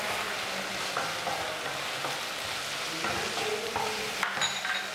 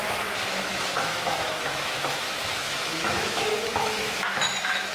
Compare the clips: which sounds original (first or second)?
first